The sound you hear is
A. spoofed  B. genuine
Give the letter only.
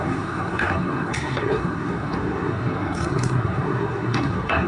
A